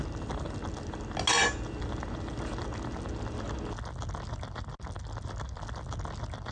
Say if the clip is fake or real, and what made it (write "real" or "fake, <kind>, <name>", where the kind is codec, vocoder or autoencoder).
real